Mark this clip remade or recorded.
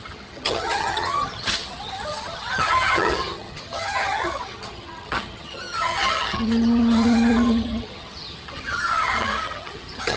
remade